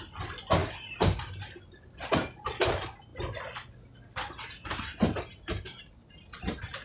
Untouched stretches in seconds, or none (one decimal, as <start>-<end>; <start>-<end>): 0.0-6.8